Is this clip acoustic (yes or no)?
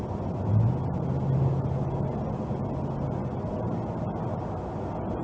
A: yes